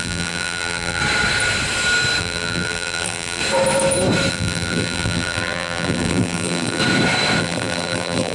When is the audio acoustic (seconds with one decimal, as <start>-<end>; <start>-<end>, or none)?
1.0-2.2; 3.4-4.3; 6.8-7.4